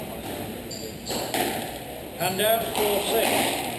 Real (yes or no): yes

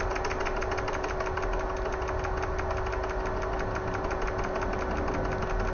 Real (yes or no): yes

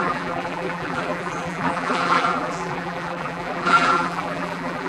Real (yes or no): no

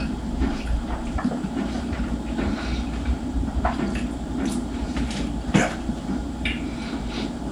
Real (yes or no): no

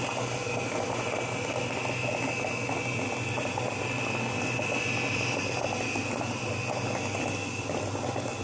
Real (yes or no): yes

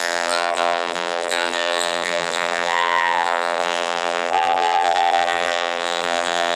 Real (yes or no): no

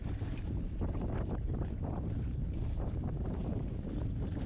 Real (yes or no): no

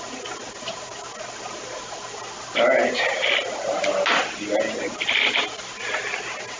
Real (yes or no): yes